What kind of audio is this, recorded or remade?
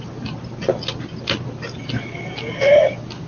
recorded